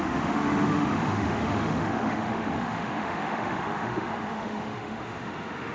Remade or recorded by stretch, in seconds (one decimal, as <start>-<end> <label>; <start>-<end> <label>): 0.0-5.7 remade